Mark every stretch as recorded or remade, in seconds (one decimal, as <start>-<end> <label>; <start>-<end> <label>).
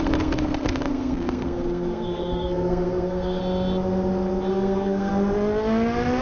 0.0-3.4 remade; 3.4-4.5 recorded; 4.5-5.1 remade; 5.1-6.2 recorded